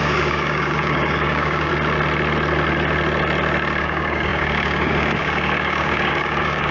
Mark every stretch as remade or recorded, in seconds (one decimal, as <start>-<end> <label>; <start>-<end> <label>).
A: 0.0-1.7 remade; 1.7-3.8 recorded; 3.8-6.7 remade